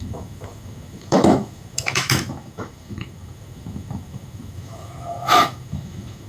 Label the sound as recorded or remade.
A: remade